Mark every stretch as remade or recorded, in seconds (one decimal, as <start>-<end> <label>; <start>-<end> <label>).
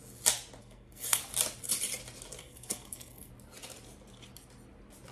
0.0-0.6 recorded; 0.6-1.2 remade; 1.2-2.4 recorded; 2.4-3.3 remade; 3.3-5.1 recorded